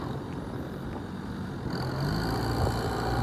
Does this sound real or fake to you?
real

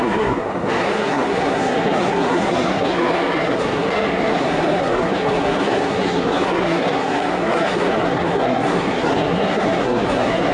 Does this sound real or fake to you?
fake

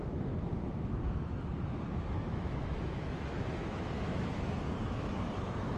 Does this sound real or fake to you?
fake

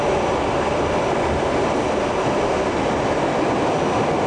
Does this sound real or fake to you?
real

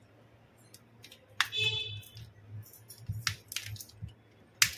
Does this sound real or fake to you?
real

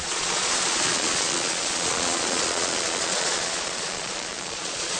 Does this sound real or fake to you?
fake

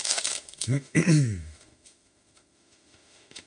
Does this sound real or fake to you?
fake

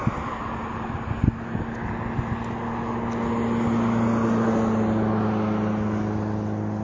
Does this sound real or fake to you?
real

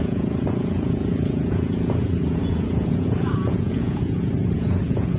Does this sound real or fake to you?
fake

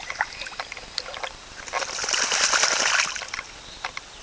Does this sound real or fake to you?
real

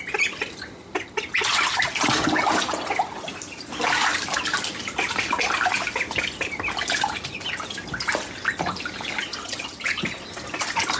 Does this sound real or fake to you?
real